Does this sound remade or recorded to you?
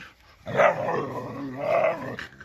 recorded